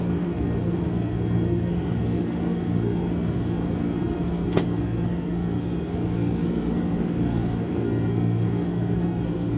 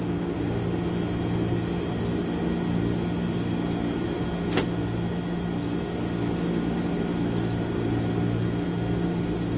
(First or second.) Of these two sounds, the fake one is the first